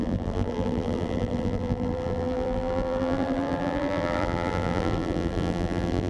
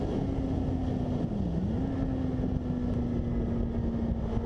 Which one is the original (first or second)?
second